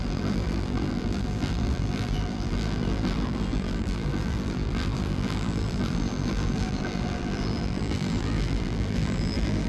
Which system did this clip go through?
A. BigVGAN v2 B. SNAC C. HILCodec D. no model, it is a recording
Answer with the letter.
A